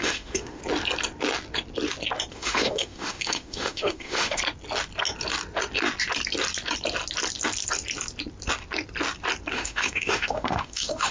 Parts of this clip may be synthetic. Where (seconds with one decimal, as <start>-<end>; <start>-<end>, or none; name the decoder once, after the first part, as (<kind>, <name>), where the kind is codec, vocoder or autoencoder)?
0.0-0.6 (autoencoder, DAC-VAE); 2.3-4.4; 9.5-11.1